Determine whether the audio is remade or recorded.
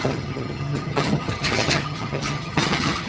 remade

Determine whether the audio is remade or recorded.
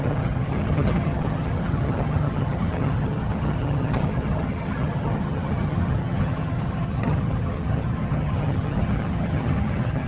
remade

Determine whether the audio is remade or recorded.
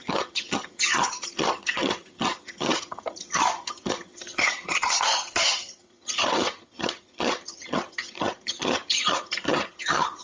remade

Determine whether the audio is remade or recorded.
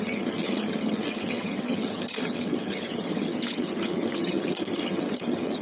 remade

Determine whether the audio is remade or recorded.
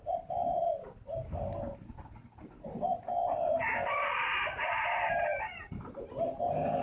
recorded